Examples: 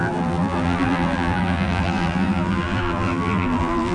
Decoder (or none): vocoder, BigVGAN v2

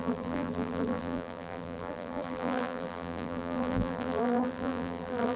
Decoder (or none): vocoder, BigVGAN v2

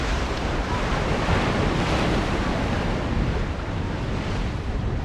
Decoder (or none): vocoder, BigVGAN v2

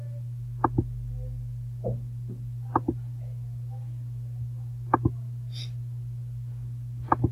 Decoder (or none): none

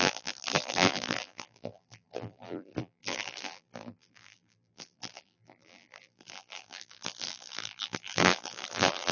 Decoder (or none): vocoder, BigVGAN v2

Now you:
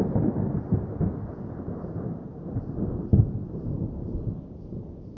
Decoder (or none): none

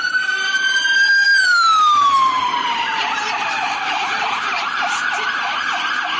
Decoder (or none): vocoder, BigVGAN v2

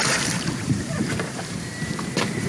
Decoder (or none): vocoder, BigVGAN v2